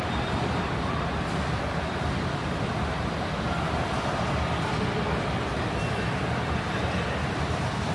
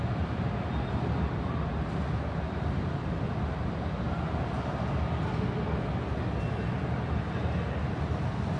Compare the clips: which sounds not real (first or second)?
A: first